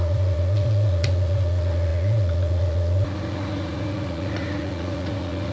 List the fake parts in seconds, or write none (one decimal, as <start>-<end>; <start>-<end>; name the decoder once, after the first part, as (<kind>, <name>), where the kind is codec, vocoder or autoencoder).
0.0-5.5 (vocoder, Vocos)